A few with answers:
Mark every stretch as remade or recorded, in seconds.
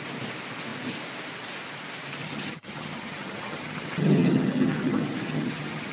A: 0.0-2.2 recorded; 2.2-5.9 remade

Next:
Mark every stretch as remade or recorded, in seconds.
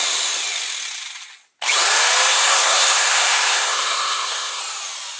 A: 0.0-2.3 recorded; 2.3-4.6 remade; 4.6-5.2 recorded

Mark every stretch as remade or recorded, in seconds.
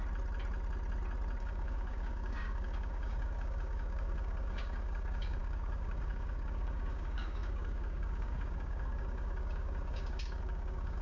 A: 0.0-1.4 recorded; 1.4-11.0 remade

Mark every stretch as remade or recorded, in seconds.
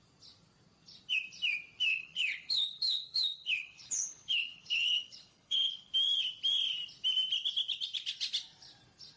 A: 0.0-1.9 recorded; 1.9-5.9 remade; 5.9-9.2 recorded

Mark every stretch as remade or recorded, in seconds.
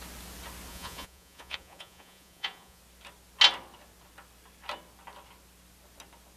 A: 0.0-0.7 recorded; 0.7-2.8 remade; 2.8-6.4 recorded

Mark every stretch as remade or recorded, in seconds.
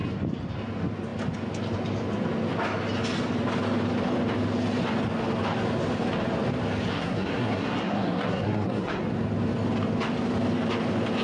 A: 0.0-6.9 recorded; 6.9-9.0 remade; 9.0-11.2 recorded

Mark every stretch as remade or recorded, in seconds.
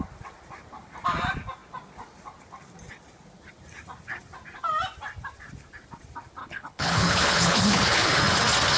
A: 0.0-6.4 recorded; 6.4-8.2 remade; 8.2-8.8 recorded